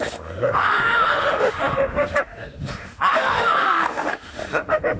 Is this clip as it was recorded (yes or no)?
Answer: no